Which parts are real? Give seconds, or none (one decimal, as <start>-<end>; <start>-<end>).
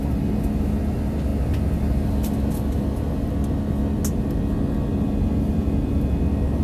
0.0-6.6